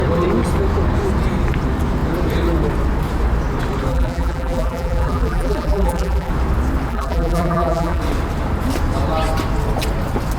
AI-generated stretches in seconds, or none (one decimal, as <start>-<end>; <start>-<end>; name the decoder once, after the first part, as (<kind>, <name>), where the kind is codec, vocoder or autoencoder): 3.9-6.3 (vocoder, BigVGAN v2); 6.9-8.0